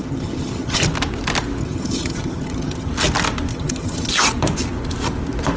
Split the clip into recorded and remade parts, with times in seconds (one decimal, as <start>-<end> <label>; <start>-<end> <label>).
0.0-0.8 remade; 0.8-1.6 recorded; 1.6-2.9 remade; 2.9-3.5 recorded; 3.5-4.1 remade; 4.1-5.6 recorded